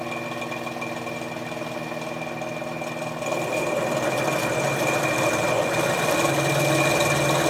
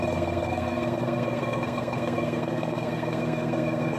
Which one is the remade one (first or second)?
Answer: second